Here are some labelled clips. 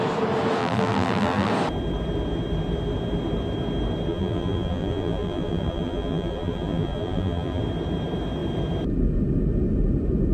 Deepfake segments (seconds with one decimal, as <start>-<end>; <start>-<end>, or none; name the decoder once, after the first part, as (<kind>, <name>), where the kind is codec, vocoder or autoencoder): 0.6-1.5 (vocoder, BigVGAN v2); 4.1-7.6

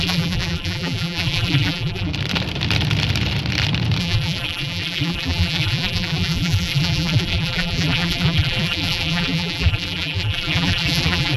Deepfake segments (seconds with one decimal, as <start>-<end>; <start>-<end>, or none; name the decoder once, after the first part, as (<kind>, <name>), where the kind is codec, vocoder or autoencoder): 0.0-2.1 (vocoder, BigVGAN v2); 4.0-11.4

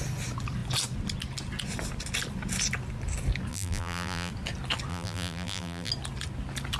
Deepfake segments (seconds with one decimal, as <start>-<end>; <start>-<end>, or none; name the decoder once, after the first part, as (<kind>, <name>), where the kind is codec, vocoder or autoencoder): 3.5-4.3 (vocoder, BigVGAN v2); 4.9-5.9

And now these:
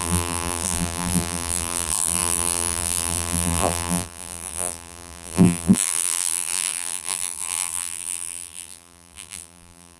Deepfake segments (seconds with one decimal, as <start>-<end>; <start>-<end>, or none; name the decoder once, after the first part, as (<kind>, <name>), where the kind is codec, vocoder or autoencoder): 0.0-10.0 (vocoder, BigVGAN v2)